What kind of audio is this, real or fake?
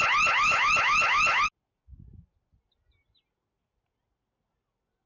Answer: real